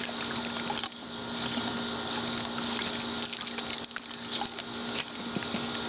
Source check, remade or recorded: recorded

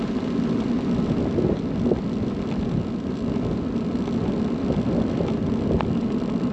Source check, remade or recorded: recorded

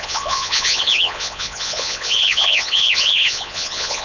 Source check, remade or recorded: remade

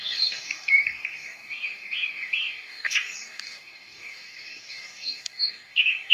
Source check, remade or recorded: remade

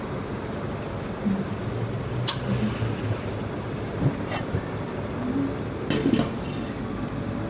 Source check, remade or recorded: recorded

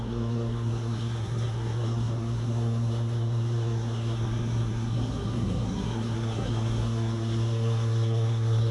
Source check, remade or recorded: remade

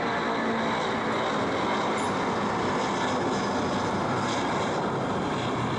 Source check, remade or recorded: recorded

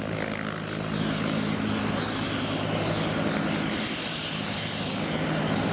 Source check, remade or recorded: recorded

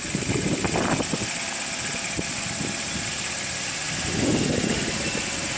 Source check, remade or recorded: recorded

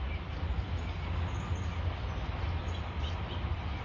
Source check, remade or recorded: recorded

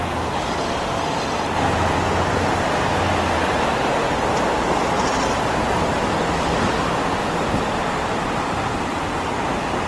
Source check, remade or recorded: recorded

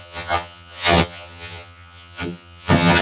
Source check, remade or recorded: remade